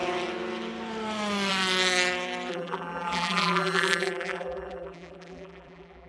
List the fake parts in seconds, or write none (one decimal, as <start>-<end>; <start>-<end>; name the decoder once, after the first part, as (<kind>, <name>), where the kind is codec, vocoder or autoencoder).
2.5-6.1 (vocoder, BigVGAN v2)